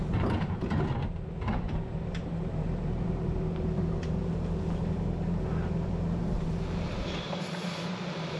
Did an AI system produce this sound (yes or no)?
yes